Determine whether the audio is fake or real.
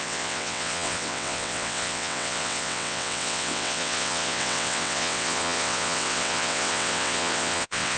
fake